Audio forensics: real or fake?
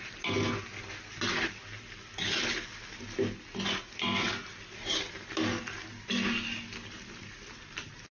real